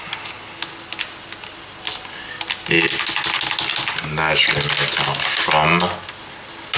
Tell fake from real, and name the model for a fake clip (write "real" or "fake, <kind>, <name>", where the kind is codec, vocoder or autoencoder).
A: real